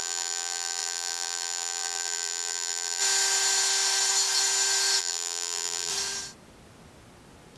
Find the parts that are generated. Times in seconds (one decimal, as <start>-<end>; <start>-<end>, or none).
0.0-3.0; 5.0-5.9